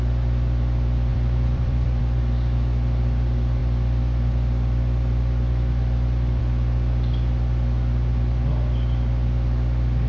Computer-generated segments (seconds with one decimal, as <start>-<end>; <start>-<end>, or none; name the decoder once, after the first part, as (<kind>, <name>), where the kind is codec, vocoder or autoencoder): 1.1-2.0 (vocoder, BigVGAN v2)